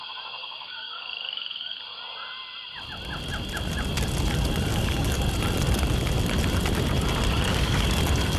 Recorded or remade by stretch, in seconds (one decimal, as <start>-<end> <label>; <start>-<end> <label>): 0.0-0.4 recorded; 0.4-1.8 remade; 1.8-4.7 recorded; 4.7-5.2 remade; 5.2-7.5 recorded; 7.5-8.0 remade; 8.0-8.4 recorded

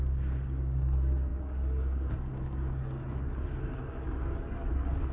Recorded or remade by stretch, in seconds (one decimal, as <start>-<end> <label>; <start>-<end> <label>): 0.0-5.1 remade